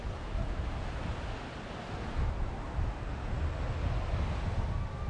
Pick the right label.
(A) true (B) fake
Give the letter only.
A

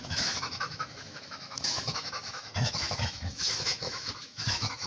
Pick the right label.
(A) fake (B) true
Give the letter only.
A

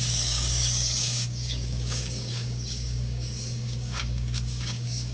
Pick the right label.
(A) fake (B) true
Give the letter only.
A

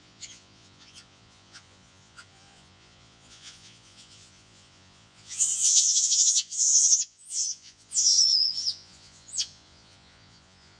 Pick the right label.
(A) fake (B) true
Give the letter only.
A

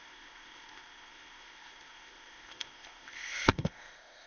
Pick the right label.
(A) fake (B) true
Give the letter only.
A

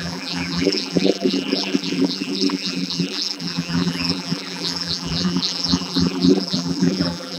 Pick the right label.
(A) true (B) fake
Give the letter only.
B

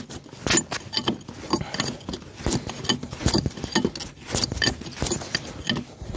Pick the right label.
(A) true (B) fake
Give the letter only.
A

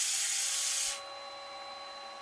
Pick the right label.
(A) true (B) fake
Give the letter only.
A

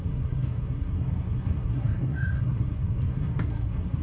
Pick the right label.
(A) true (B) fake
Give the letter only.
B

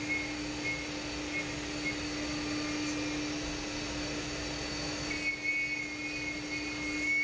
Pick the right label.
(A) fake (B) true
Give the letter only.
B